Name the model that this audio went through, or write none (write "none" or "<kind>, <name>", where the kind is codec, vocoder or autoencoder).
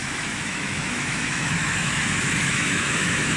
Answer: autoencoder, DAC-VAE